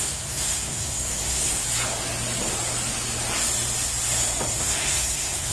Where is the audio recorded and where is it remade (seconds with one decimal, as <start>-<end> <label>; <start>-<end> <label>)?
0.0-1.6 remade; 1.6-4.5 recorded; 4.5-5.5 remade